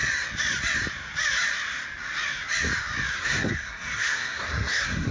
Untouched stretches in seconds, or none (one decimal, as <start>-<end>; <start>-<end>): 0.0-3.1